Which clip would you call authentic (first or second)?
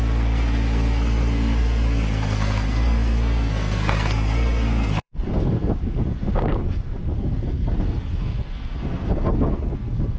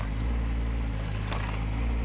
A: second